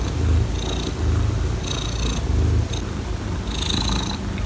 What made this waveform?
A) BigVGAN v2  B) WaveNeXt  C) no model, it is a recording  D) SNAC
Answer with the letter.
C